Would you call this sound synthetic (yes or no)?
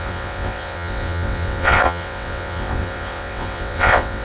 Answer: yes